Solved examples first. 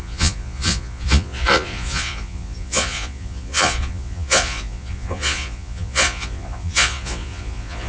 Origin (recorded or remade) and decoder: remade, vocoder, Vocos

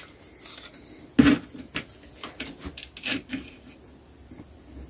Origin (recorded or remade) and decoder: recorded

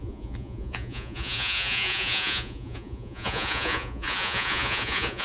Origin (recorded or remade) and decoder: remade, vocoder, Vocos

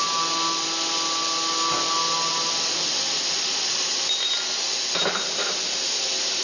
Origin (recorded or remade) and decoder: recorded